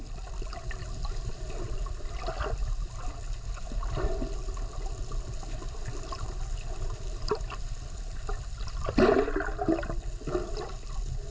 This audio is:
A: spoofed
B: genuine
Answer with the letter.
B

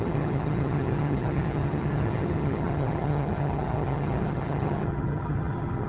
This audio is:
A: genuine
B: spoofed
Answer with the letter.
B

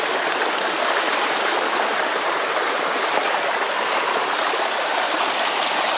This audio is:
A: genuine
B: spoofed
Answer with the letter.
A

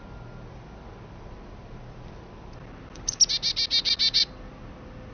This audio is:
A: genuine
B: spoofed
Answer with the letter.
A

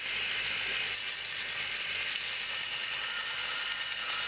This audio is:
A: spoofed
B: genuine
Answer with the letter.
B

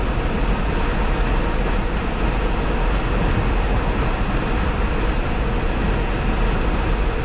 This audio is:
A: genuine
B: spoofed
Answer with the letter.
A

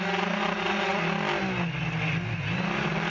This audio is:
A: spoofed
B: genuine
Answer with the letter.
B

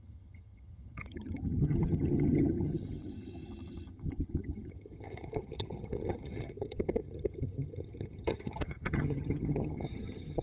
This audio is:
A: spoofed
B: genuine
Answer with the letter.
A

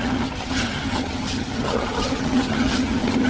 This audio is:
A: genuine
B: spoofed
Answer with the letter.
B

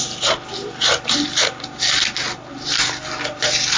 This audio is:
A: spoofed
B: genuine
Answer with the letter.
B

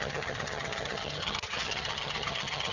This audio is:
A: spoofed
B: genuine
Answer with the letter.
A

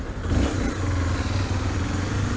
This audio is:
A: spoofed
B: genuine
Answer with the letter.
B